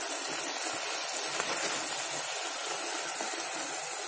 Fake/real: real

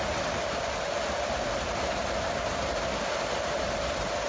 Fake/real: real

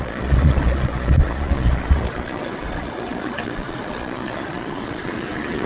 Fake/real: fake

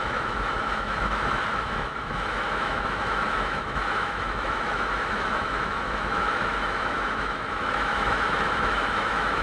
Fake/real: fake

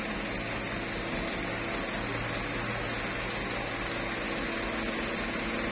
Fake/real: real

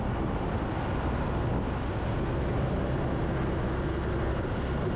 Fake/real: real